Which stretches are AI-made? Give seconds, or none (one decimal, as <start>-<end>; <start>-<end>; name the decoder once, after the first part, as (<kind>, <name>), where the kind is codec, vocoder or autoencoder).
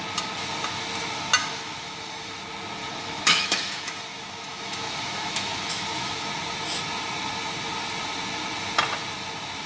1.4-2.4 (autoencoder, DAC-VAE); 2.8-6.3